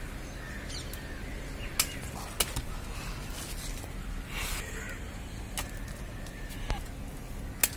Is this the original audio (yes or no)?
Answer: yes